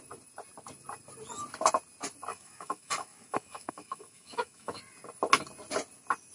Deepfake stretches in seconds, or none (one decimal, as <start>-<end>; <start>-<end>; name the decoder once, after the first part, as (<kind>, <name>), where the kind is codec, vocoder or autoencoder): 2.3-4.8 (autoencoder, DAC-VAE)